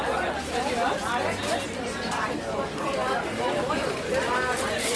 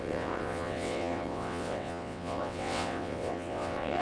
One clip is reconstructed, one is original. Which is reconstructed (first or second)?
second